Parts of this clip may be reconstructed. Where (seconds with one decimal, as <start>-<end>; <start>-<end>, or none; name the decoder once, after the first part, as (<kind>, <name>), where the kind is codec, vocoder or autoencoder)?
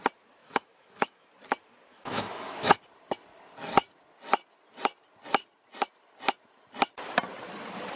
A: 0.4-1.3 (autoencoder, DAC-VAE); 1.9-2.8